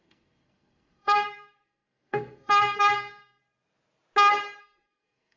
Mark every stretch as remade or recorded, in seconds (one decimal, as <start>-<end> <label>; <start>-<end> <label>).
0.0-3.4 remade; 3.4-4.6 recorded; 4.6-5.4 remade